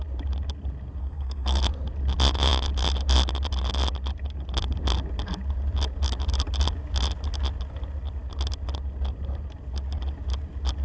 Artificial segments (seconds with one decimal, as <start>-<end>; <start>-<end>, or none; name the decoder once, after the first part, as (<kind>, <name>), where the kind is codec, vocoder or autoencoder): 1.0-1.6 (codec, SNAC)